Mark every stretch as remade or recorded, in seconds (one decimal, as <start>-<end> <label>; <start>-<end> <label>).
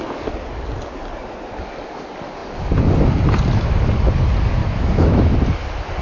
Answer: 0.0-4.6 recorded; 4.6-5.3 remade; 5.3-6.0 recorded